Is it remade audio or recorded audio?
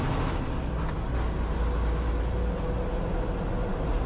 recorded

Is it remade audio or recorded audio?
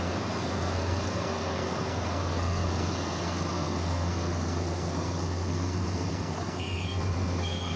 remade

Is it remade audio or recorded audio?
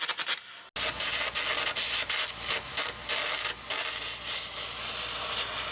recorded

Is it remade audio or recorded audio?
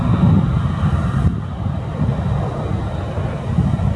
recorded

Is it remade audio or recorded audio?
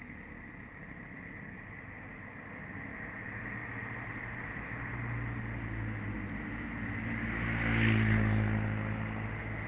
recorded